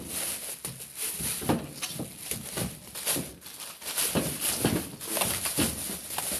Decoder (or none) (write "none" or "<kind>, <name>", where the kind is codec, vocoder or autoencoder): none